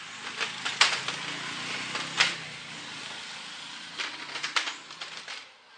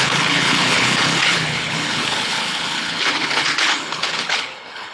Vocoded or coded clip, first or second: second